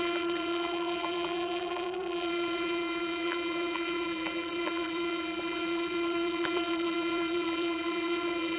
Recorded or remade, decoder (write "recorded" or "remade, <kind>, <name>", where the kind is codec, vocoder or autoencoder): remade, vocoder, BigVGAN v2